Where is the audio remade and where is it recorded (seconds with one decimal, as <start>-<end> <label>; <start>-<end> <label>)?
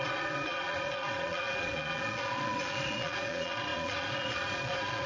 0.0-5.1 remade